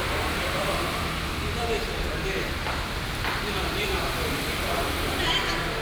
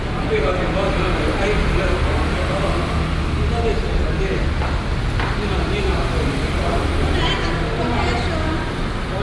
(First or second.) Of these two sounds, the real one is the second